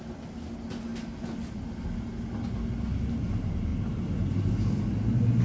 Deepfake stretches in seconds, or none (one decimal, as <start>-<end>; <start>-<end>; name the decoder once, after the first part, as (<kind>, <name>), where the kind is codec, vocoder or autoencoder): none